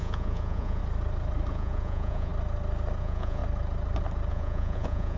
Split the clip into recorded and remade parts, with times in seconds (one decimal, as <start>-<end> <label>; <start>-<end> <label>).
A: 0.0-0.8 remade; 0.8-1.5 recorded; 1.5-2.3 remade; 2.3-3.0 recorded; 3.0-3.4 remade; 3.4-4.3 recorded; 4.3-5.2 remade